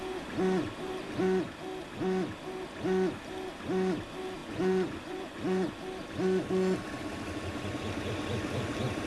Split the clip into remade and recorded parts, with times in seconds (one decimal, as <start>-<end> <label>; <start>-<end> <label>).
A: 0.0-4.4 recorded; 4.4-5.7 remade; 5.7-9.1 recorded